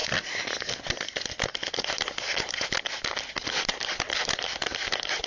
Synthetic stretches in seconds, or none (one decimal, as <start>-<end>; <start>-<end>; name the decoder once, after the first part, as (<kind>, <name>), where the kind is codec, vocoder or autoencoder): none